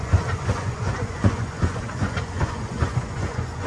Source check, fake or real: fake